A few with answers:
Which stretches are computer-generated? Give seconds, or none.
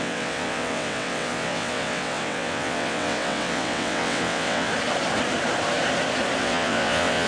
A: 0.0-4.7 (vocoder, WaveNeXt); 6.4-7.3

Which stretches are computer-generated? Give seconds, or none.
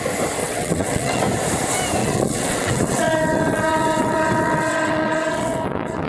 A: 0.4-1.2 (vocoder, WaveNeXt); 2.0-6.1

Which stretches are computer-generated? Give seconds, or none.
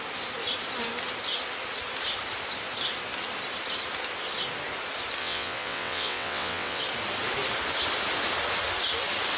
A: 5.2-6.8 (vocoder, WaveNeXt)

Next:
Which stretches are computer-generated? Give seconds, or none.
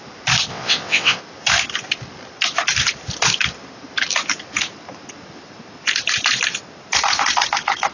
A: 0.5-1.2 (vocoder, WaveNeXt)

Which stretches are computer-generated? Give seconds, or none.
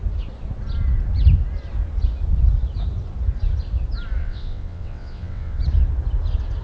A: 4.2-5.6 (vocoder, WaveNeXt)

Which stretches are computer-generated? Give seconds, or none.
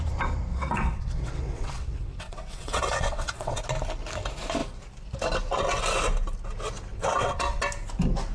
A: 0.5-3.6 (vocoder, WaveNeXt); 6.9-7.6